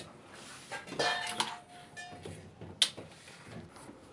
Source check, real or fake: real